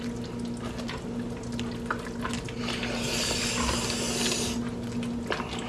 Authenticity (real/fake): real